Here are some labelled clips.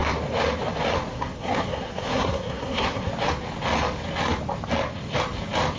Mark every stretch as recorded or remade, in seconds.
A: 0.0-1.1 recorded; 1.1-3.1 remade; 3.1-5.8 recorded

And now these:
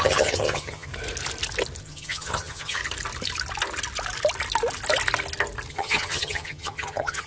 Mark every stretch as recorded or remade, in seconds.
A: 0.0-0.9 remade; 0.9-1.8 recorded; 1.8-2.8 remade; 2.8-5.7 recorded; 5.7-7.3 remade

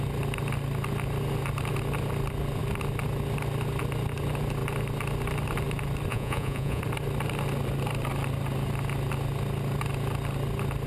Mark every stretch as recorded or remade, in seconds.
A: 0.0-6.1 recorded; 6.1-6.8 remade; 6.8-10.9 recorded

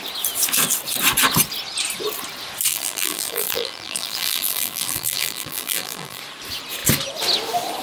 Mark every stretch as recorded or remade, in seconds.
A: 0.0-2.7 recorded; 2.7-6.2 remade; 6.2-7.8 recorded